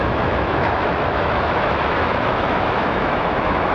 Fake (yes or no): yes